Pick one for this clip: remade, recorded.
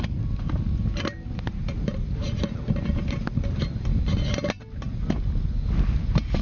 recorded